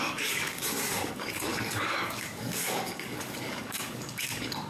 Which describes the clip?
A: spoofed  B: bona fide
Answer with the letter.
A